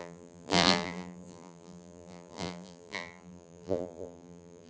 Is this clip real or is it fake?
fake